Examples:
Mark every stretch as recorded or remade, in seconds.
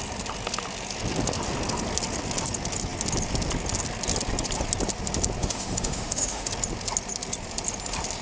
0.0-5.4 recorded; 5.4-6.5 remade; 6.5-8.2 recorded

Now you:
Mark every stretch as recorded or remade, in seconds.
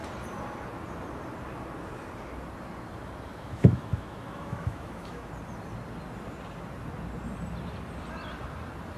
0.0-3.3 recorded; 3.3-5.3 remade; 5.3-9.0 recorded